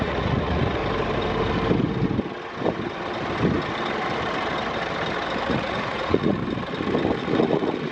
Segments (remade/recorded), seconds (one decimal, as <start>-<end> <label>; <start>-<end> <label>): 0.0-0.8 remade; 0.8-5.5 recorded; 5.5-6.4 remade; 6.4-7.2 recorded; 7.2-7.9 remade